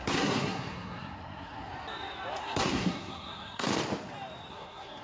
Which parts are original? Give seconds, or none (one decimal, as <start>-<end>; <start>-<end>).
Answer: 1.7-2.4; 3.7-4.5